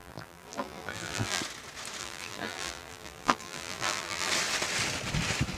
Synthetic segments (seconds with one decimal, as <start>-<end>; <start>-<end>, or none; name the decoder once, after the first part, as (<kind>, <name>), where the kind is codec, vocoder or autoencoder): 0.0-1.4 (vocoder, BigVGAN v2); 2.0-4.3